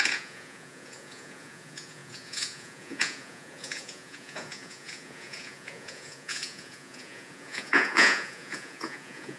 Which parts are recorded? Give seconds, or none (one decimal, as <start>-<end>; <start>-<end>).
none